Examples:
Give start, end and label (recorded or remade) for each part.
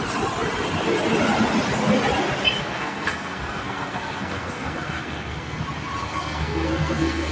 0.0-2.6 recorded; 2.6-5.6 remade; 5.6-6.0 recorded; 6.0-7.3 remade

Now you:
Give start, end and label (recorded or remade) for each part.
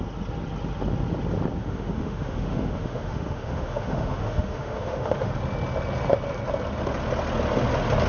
0.0-1.6 recorded; 1.6-5.3 remade; 5.3-8.1 recorded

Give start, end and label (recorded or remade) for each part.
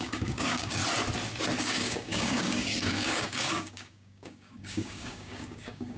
0.0-0.8 remade; 0.8-1.6 recorded; 1.6-6.0 remade